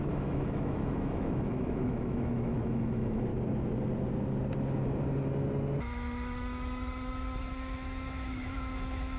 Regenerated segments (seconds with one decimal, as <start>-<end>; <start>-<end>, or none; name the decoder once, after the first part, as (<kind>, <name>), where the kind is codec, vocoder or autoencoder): 0.0-3.3 (autoencoder, DAC-VAE); 5.8-9.2

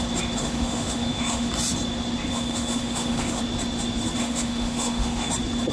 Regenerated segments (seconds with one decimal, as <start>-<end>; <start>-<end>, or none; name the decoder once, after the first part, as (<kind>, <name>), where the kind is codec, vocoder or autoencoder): 0.4-1.5 (autoencoder, DAC-VAE); 2.3-3.4; 4.2-5.3

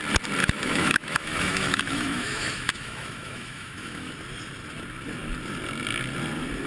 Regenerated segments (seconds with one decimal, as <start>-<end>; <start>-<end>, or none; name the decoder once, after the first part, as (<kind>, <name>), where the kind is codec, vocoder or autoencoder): 0.4-4.1 (autoencoder, DAC-VAE)

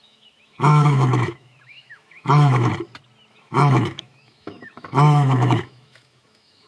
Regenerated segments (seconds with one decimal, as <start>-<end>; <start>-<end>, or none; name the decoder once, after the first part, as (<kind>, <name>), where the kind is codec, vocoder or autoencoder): 0.0-2.7 (autoencoder, DAC-VAE); 3.3-6.7

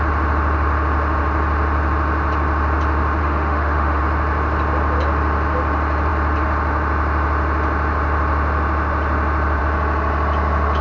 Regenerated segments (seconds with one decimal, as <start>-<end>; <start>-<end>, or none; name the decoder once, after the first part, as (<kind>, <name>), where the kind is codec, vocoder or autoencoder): 3.2-4.0 (autoencoder, DAC-VAE)

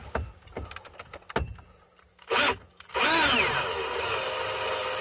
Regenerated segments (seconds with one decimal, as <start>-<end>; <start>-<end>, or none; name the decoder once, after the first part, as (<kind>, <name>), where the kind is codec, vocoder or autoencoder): 2.1-3.4 (autoencoder, DAC-VAE)

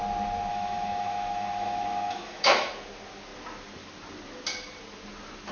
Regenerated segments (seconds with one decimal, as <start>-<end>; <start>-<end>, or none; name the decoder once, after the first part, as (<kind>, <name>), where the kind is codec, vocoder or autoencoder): 0.5-2.7 (autoencoder, DAC-VAE)